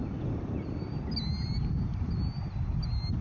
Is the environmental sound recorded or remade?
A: recorded